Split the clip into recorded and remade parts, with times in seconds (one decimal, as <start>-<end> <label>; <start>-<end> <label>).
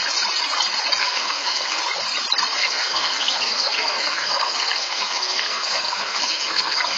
0.0-1.0 recorded; 1.0-1.8 remade; 1.8-2.6 recorded; 2.6-7.0 remade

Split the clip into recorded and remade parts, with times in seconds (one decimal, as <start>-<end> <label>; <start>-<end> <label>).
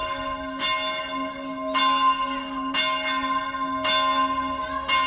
0.0-5.1 recorded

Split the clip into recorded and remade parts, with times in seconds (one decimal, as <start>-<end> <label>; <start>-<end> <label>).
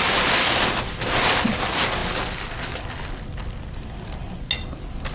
0.0-5.1 recorded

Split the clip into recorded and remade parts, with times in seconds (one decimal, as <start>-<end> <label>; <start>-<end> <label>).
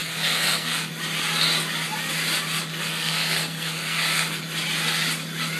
0.0-0.9 remade; 0.9-2.8 recorded; 2.8-4.4 remade; 4.4-5.6 recorded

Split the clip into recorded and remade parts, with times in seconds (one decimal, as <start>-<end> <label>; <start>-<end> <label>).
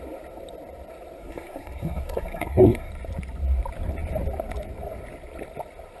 0.0-1.2 recorded; 1.2-2.9 remade; 2.9-6.0 recorded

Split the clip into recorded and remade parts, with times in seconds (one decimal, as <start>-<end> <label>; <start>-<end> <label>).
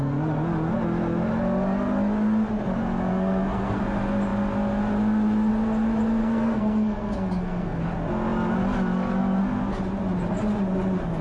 0.0-3.1 recorded; 3.1-3.8 remade; 3.8-6.2 recorded; 6.2-7.8 remade; 7.8-11.2 recorded